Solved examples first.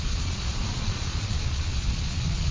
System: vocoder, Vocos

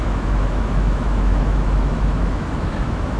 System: autoencoder, DAC-VAE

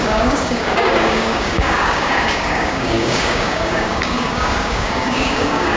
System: codec, DAC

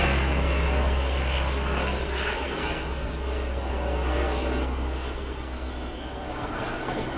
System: codec, SNAC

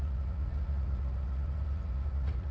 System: vocoder, Vocos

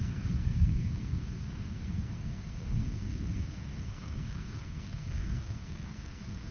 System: codec, SNAC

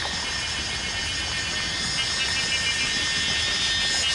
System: none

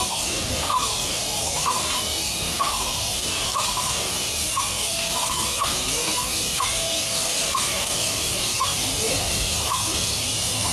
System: codec, DAC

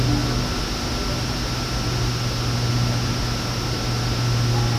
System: none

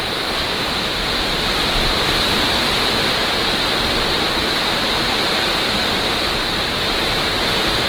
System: vocoder, BigVGAN v2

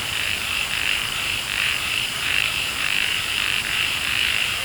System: vocoder, BigVGAN v2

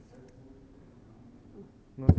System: none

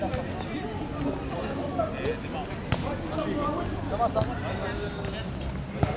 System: none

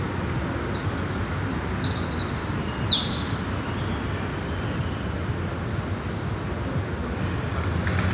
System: none